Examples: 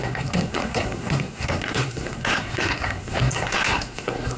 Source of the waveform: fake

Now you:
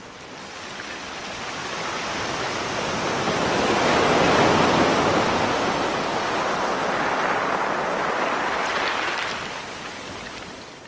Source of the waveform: real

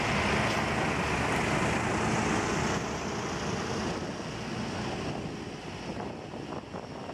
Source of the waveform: real